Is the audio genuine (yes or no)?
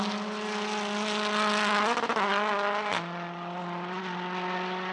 yes